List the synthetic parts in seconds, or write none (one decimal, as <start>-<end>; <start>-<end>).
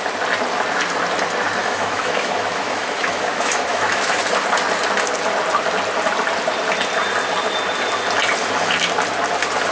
1.6-4.2